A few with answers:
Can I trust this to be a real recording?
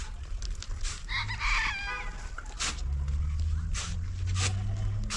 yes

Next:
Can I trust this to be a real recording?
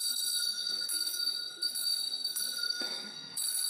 no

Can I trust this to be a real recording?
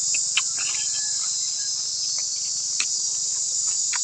yes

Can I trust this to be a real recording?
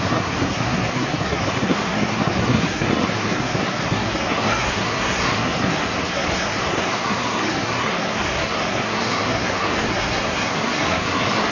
no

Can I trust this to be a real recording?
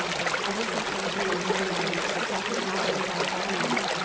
yes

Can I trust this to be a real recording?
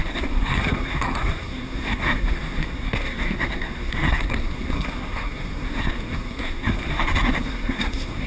no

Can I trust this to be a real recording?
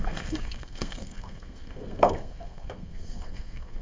no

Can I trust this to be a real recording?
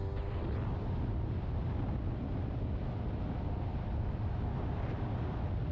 yes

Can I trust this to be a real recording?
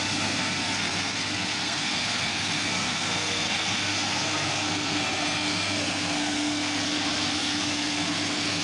no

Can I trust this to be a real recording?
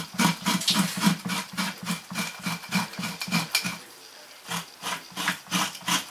yes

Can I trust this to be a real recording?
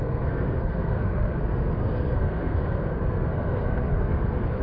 no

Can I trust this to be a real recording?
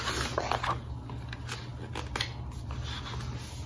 yes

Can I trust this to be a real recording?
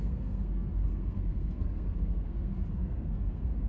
no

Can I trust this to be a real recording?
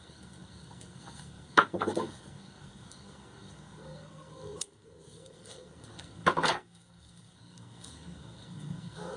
no